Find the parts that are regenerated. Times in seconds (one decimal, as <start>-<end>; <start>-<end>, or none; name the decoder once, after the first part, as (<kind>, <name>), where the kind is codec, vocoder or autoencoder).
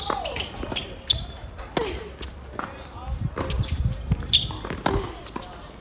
none